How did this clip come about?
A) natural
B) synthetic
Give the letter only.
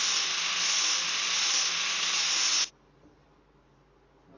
A